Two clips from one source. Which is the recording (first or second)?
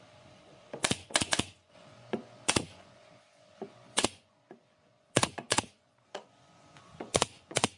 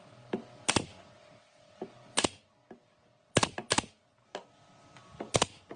second